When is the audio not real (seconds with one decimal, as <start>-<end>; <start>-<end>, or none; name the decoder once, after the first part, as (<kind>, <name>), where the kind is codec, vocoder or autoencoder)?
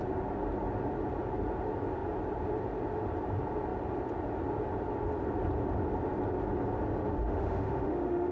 7.1-8.3 (autoencoder, DAC-VAE)